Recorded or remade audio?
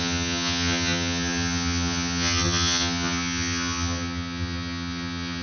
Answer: remade